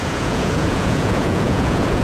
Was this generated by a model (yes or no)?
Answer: yes